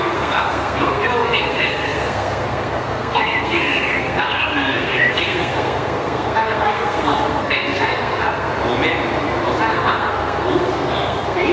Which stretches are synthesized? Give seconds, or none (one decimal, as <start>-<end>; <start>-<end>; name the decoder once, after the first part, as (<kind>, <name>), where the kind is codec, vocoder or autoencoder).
0.0-8.5 (codec, SNAC); 9.7-11.5